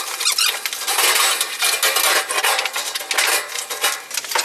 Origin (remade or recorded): recorded